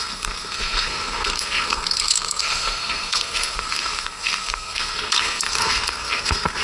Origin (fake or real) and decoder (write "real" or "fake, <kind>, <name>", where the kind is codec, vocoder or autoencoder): fake, codec, SNAC